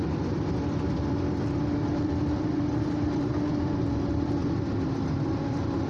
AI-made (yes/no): yes